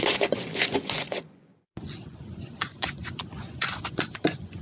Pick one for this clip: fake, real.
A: fake